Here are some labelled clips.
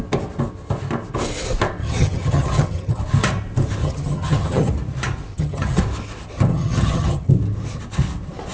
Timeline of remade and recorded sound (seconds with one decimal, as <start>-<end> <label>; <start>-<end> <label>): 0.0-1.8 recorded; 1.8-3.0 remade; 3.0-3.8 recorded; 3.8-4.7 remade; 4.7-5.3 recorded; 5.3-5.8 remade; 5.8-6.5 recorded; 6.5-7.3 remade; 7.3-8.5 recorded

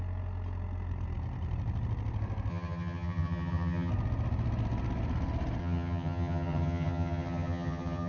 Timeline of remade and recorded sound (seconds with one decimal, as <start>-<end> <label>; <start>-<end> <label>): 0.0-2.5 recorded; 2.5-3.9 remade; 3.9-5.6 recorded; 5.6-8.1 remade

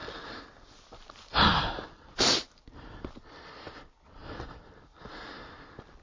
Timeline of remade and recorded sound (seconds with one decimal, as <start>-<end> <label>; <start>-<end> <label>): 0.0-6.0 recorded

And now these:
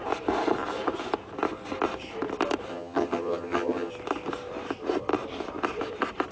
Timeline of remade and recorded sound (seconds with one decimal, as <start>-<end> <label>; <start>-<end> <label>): 0.0-2.7 recorded; 2.7-3.9 remade; 3.9-6.3 recorded

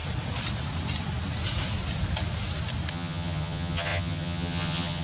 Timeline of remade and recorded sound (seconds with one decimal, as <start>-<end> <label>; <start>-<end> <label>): 0.0-2.9 recorded; 2.9-5.0 remade

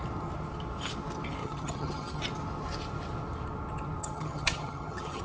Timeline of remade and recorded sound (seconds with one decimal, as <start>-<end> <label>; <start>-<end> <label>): 0.0-1.4 recorded; 1.4-2.2 remade; 2.2-4.0 recorded; 4.0-5.2 remade